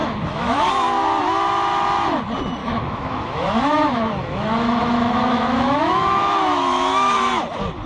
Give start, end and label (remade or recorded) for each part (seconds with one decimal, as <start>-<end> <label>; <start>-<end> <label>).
0.0-0.7 remade; 0.7-2.6 recorded; 2.6-7.3 remade; 7.3-7.9 recorded